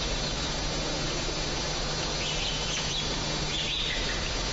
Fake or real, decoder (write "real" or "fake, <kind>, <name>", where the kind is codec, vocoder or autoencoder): real